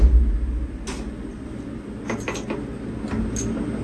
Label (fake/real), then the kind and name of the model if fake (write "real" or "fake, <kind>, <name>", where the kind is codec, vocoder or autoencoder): real